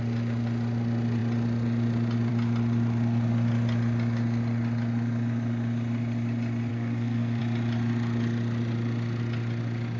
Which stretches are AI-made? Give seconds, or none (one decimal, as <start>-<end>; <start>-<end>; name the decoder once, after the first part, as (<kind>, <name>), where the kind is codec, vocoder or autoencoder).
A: 6.7-7.4 (codec, SNAC)